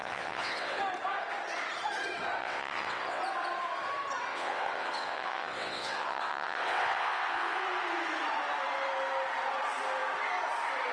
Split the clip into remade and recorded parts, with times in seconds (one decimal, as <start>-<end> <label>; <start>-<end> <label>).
0.0-0.8 remade; 0.8-2.4 recorded; 2.4-3.2 remade; 3.2-4.3 recorded; 4.3-7.6 remade; 7.6-10.9 recorded

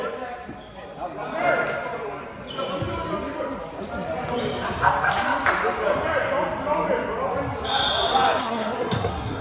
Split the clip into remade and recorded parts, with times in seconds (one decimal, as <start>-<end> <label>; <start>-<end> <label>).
0.0-8.4 recorded; 8.4-9.4 remade

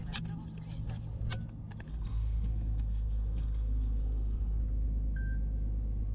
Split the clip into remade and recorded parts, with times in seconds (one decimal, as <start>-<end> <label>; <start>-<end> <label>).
0.0-1.9 recorded; 1.9-4.6 remade; 4.6-6.1 recorded

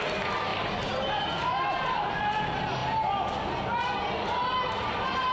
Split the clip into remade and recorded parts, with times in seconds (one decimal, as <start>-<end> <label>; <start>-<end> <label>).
0.0-0.5 recorded; 0.5-2.2 remade; 2.2-5.3 recorded

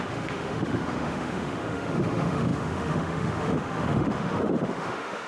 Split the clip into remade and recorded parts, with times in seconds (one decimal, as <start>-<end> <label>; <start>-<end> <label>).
0.0-5.3 remade